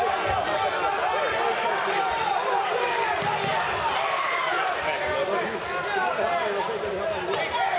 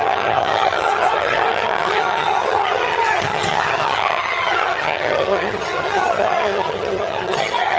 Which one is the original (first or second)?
first